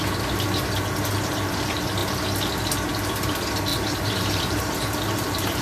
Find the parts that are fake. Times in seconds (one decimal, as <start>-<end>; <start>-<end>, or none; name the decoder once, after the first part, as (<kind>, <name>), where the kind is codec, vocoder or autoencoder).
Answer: 3.7-5.6 (vocoder, BigVGAN v2)